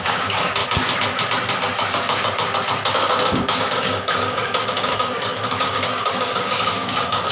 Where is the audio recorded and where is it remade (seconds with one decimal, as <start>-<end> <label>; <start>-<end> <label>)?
0.0-0.6 remade; 0.6-3.4 recorded; 3.4-7.3 remade